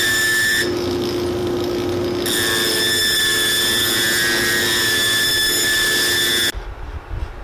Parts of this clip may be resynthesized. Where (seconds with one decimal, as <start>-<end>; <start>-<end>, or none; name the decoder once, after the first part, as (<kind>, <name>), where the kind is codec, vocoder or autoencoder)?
none